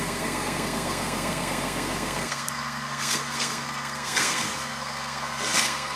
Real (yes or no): no